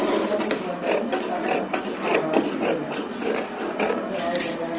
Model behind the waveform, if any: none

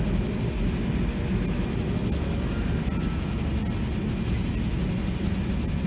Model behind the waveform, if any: none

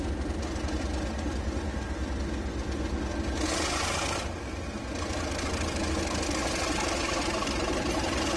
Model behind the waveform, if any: none